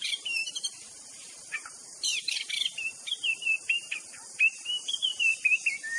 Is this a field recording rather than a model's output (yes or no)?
no